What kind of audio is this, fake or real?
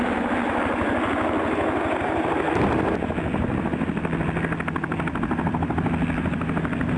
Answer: real